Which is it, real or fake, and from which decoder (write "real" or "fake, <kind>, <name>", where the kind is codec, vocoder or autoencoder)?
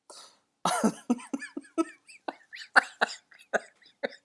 real